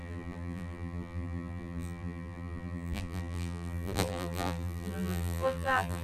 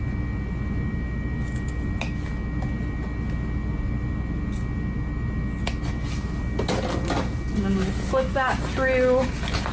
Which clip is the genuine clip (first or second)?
second